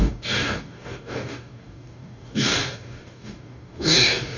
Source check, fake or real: fake